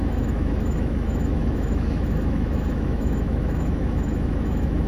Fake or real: fake